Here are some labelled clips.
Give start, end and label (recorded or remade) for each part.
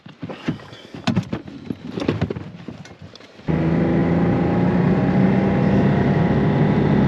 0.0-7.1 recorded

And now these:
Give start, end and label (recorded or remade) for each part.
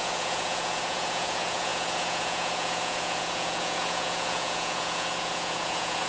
0.0-6.1 remade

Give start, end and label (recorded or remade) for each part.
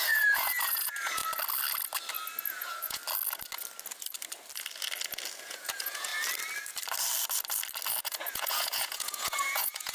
0.0-1.2 remade; 1.2-2.5 recorded; 2.5-3.0 remade; 3.0-5.4 recorded; 5.4-6.1 remade; 6.1-8.0 recorded; 8.0-9.9 remade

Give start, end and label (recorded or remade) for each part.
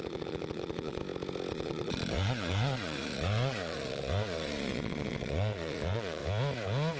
0.0-1.0 remade; 1.0-1.5 recorded; 1.5-6.2 remade; 6.2-7.0 recorded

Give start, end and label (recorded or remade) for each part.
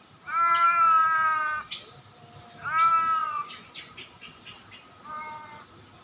0.0-3.2 recorded; 3.2-4.4 remade; 4.4-6.0 recorded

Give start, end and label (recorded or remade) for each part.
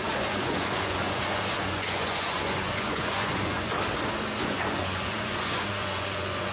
0.0-3.7 remade; 3.7-4.4 recorded; 4.4-6.5 remade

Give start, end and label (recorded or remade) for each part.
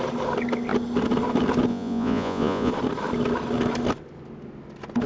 0.0-1.7 recorded; 1.7-2.7 remade; 2.7-5.1 recorded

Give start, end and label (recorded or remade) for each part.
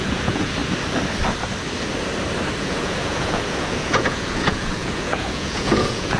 0.0-0.6 remade; 0.6-2.6 recorded; 2.6-6.2 remade